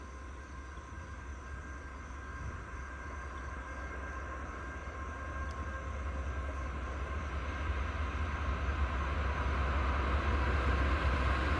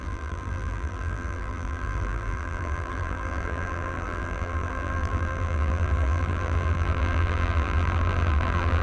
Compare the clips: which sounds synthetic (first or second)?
second